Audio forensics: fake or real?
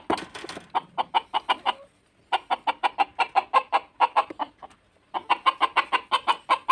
real